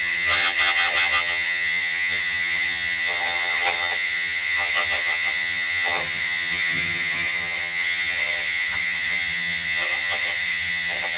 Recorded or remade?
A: remade